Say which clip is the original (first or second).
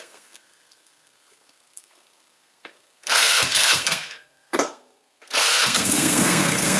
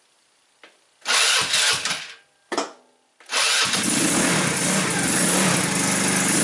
second